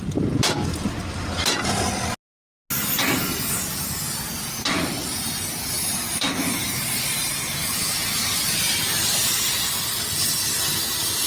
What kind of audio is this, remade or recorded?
recorded